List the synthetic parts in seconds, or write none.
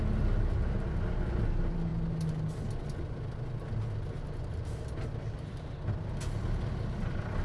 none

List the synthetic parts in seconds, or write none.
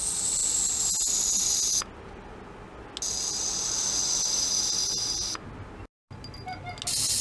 none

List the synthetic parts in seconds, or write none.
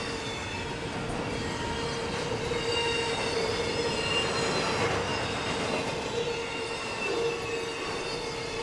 none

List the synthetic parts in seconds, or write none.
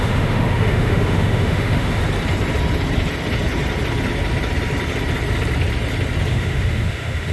0.0-2.0; 6.3-7.3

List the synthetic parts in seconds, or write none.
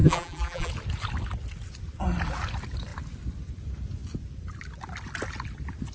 0.0-0.7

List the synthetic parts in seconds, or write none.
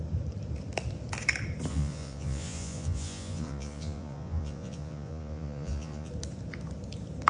1.7-6.1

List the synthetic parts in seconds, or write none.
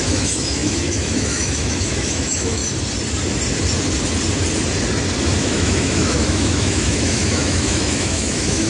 0.0-2.6; 5.2-8.7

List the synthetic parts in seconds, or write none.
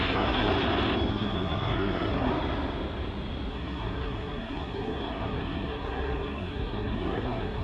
0.0-0.5; 1.1-2.3; 3.5-7.6